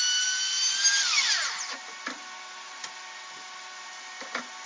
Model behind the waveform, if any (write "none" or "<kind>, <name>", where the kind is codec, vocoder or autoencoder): none